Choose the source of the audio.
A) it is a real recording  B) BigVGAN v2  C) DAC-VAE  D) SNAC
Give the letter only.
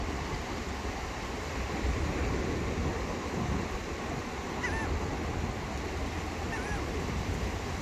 A